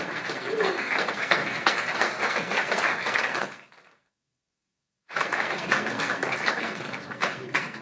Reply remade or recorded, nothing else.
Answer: remade